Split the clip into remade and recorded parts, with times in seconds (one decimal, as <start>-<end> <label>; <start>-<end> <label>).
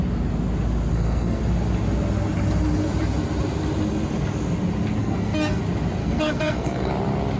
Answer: 0.0-0.9 recorded; 0.9-1.4 remade; 1.4-5.0 recorded; 5.0-5.6 remade; 5.6-6.0 recorded; 6.0-6.9 remade; 6.9-7.4 recorded